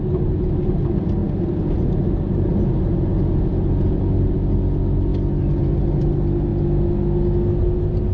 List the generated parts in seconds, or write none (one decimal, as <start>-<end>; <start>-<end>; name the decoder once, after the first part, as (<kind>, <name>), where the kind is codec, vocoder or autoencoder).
none